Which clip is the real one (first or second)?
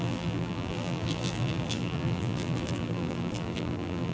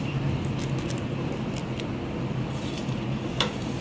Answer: second